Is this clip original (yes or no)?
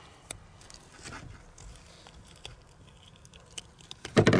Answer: yes